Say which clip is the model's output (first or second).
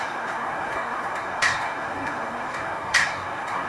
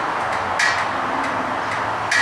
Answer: first